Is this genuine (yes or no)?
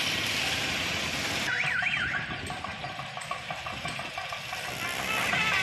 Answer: yes